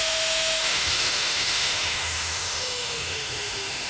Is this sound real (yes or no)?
no